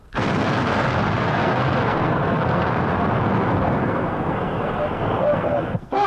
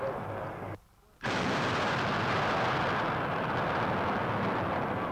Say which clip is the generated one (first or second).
first